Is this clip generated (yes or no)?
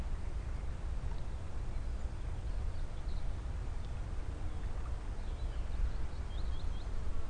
no